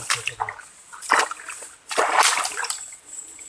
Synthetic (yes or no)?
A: no